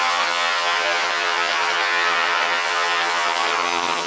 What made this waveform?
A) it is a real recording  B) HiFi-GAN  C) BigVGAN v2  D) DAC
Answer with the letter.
B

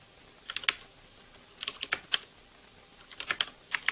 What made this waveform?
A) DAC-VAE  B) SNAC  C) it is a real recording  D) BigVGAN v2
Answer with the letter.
C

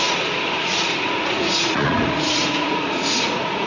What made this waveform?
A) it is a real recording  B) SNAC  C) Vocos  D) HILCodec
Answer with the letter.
C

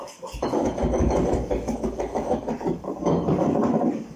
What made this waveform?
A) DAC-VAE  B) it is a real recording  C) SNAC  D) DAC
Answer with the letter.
D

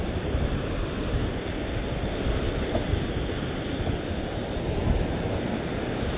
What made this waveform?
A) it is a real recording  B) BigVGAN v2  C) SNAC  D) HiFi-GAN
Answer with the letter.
A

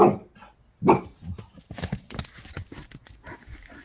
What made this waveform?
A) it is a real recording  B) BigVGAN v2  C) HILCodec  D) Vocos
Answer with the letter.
A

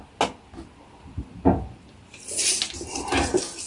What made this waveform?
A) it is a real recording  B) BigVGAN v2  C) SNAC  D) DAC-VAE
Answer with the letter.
A